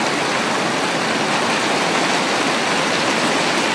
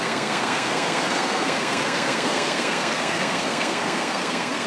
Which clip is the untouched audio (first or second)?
first